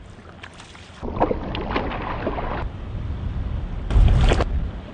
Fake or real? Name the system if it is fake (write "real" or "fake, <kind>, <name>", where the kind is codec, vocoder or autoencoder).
real